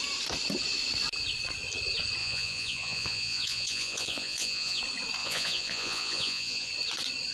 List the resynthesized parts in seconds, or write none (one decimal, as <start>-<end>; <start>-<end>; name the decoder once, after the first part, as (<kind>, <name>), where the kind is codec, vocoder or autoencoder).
2.2-4.8 (vocoder, Vocos); 5.2-6.7